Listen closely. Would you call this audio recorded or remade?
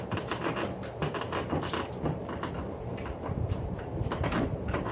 remade